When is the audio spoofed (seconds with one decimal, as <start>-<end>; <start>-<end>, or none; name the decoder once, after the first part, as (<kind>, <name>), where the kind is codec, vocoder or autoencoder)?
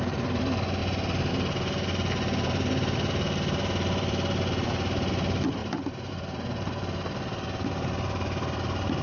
0.0-0.8 (vocoder, BigVGAN v2); 1.3-9.0